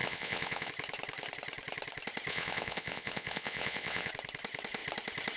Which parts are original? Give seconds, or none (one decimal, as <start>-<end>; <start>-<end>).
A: 0.7-2.3; 4.1-5.4